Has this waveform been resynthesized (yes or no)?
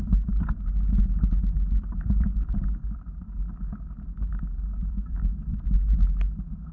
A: no